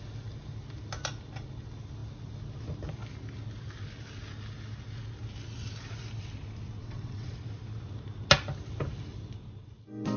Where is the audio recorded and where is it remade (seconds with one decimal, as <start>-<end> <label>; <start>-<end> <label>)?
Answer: 0.0-6.8 recorded; 6.8-7.3 remade; 7.3-10.2 recorded